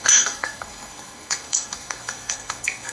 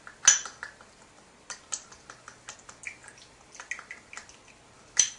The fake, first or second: first